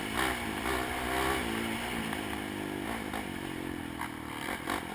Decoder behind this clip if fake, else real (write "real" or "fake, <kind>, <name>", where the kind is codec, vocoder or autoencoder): real